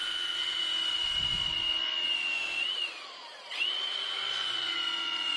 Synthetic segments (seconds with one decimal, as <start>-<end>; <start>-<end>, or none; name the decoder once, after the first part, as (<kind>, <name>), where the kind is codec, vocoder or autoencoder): 0.0-5.4 (vocoder, Vocos)